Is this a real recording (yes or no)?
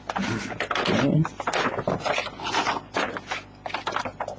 yes